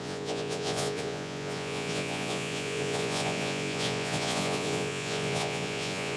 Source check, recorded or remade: remade